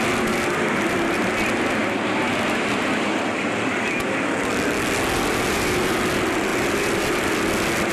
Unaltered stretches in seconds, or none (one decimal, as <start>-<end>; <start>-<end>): 0.0-7.9